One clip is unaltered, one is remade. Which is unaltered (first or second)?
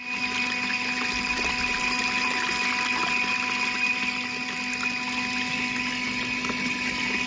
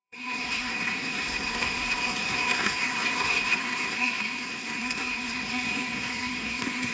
first